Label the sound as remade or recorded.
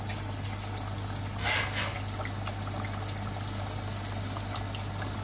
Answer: recorded